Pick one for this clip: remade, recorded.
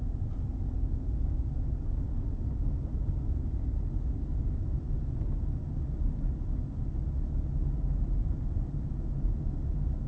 recorded